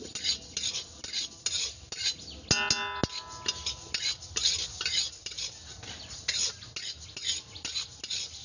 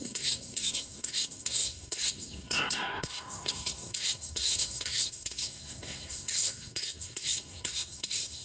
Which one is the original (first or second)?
first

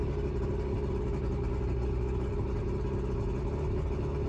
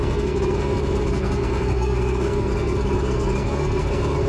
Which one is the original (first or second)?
first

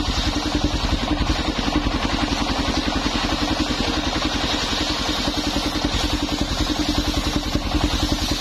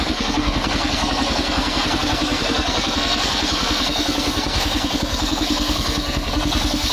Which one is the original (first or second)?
first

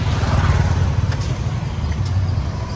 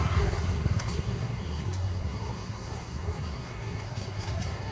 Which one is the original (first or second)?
first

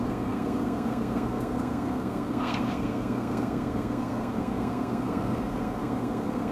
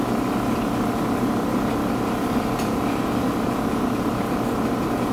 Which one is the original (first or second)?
second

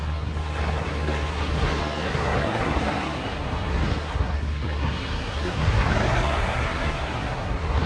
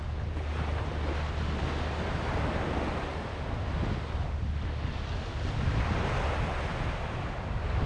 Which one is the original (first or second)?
second